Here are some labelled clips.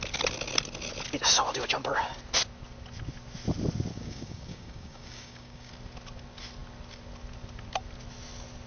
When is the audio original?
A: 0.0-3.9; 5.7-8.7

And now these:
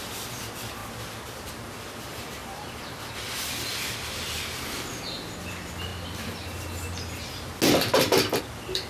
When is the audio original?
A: 0.8-1.3; 3.7-5.4; 5.9-8.4

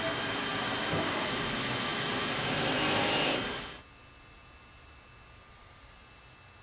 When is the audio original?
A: 0.0-6.6

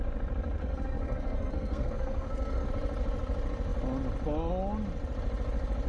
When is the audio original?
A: 0.0-0.6; 2.7-5.9

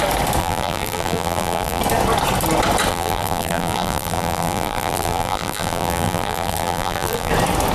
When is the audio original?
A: 0.0-0.4; 1.8-2.9; 7.3-7.7